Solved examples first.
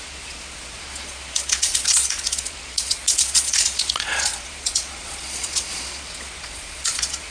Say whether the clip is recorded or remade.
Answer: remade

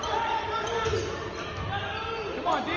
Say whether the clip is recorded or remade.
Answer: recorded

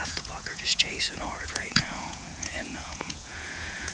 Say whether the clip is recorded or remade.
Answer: remade